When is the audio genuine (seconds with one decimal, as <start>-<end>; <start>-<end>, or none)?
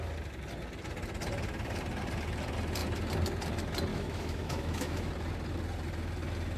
0.0-3.9; 5.1-6.6